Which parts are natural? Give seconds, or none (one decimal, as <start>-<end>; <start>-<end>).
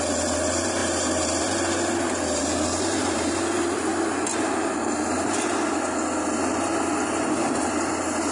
3.9-7.4